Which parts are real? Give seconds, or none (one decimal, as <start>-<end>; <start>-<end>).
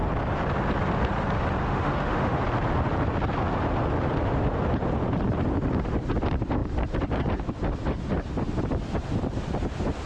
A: 0.0-1.6; 2.4-10.1